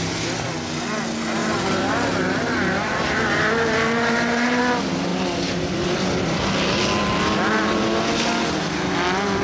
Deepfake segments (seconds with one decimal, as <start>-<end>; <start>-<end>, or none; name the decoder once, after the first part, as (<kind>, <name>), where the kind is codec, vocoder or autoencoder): 1.4-4.6 (vocoder, BigVGAN v2)